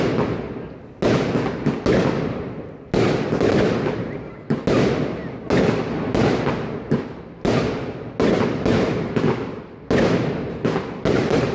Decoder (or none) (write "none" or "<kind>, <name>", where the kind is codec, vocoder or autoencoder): none